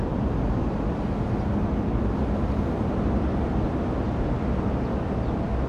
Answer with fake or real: real